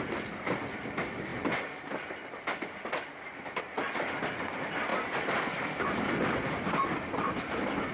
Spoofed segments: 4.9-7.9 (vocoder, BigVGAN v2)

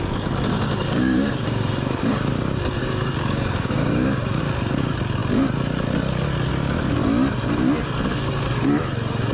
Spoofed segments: 0.5-2.3 (codec, DAC); 2.8-4.4

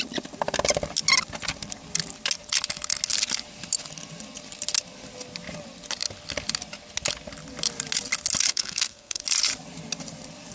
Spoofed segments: 8.5-9.2 (codec, SNAC)